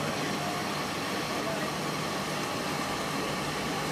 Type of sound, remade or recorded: recorded